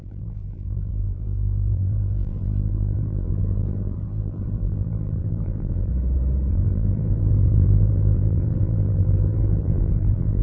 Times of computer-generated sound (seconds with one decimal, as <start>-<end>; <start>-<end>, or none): 0.0-5.9; 6.5-10.4